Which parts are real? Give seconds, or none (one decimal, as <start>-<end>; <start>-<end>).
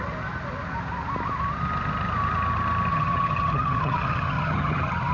0.0-2.9